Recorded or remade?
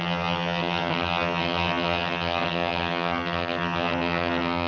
remade